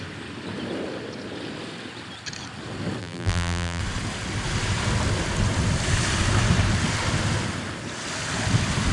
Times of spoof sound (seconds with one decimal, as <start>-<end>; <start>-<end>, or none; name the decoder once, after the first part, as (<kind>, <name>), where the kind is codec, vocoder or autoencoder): 3.0-3.8 (vocoder, BigVGAN v2)